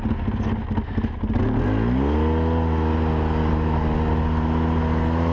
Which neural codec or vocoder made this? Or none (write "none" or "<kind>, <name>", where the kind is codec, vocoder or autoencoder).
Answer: none